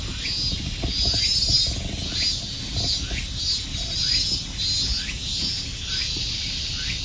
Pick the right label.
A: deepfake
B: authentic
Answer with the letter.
B